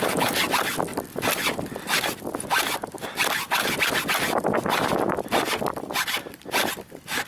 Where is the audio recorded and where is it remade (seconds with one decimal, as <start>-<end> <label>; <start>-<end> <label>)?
0.0-5.7 recorded; 5.7-6.7 remade; 6.7-7.3 recorded